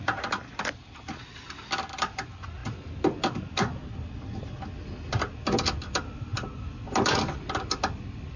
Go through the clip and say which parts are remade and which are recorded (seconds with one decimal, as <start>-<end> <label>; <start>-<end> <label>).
0.0-8.4 recorded